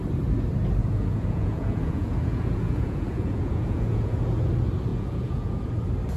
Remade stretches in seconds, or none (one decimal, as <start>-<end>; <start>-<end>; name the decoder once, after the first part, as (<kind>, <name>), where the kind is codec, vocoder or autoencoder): 0.8-4.5 (vocoder, Vocos); 4.9-5.7